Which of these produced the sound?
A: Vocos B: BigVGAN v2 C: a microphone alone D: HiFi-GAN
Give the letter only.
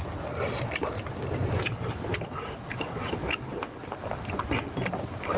C